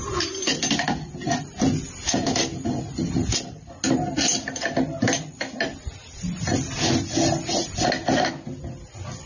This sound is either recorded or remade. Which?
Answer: recorded